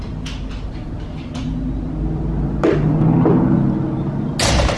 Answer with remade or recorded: recorded